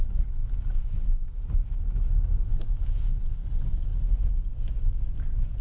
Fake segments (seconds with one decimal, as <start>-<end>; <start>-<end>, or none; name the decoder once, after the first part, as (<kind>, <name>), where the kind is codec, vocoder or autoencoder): 2.5-3.1 (vocoder, Vocos); 3.9-4.5